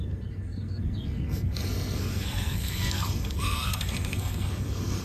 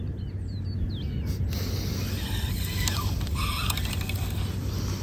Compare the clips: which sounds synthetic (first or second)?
first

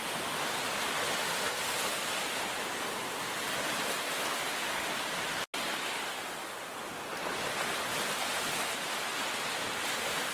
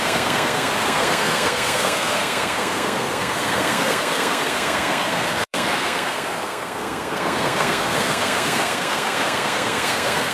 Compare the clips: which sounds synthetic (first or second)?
second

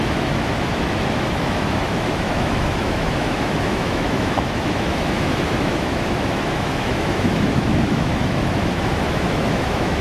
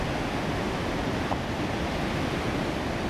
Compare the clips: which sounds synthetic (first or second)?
first